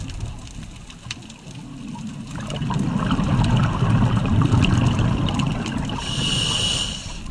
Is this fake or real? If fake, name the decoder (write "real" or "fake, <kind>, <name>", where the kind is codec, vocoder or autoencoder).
real